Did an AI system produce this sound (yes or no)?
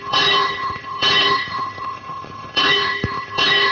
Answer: yes